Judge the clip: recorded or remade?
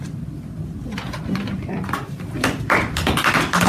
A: recorded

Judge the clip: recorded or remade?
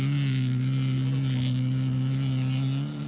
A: recorded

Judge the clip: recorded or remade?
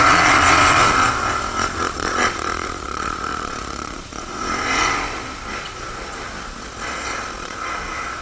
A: remade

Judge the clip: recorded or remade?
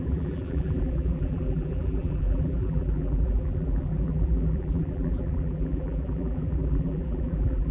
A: remade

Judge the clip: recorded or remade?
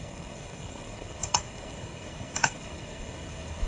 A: remade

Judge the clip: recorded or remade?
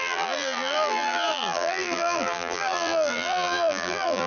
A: remade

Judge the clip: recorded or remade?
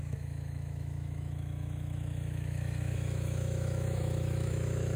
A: remade